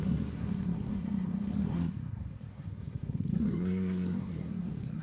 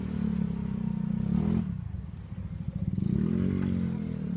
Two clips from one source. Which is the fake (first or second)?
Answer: first